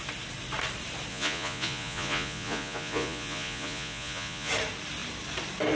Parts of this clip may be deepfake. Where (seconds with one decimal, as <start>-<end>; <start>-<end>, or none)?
1.1-4.5